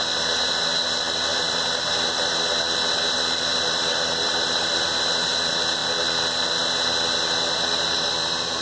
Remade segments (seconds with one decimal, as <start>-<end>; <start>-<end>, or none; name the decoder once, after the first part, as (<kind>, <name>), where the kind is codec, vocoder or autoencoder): 1.3-2.5 (vocoder, BigVGAN v2); 3.5-4.8